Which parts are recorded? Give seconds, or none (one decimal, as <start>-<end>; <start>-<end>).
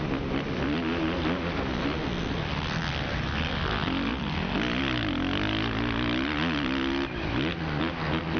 0.0-8.4